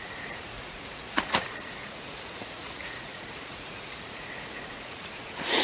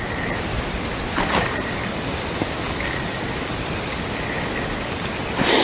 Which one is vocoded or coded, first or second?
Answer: first